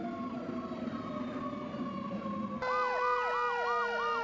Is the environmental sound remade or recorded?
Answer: recorded